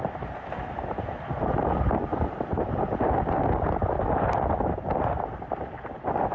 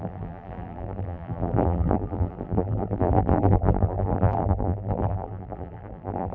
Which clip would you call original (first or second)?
first